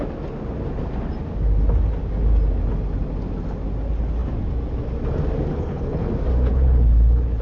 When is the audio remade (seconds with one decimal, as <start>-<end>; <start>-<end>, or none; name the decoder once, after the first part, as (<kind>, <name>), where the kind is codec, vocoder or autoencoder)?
5.5-6.1 (codec, HILCodec); 6.5-7.4